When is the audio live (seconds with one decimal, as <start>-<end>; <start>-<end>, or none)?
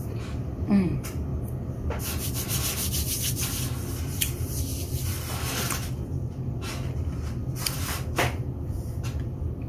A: 1.3-2.0; 5.1-7.4